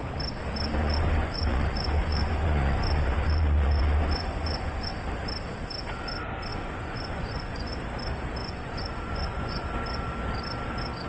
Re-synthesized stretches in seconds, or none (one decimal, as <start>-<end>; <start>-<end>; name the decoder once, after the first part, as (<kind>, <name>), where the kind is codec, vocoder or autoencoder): 0.8-4.9 (vocoder, Vocos); 6.5-7.7; 8.4-9.7